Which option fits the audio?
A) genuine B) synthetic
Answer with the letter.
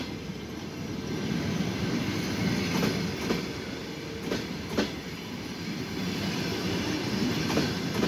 A